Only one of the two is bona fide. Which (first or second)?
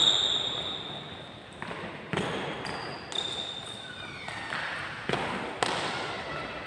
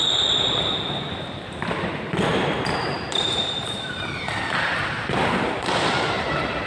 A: first